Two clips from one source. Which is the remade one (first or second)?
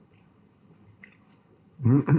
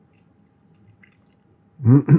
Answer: first